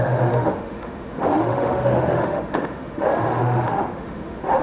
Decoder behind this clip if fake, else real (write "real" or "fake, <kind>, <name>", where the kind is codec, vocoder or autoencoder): fake, autoencoder, DAC-VAE